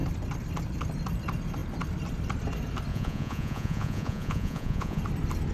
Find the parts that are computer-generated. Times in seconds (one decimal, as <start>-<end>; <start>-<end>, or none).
2.9-5.0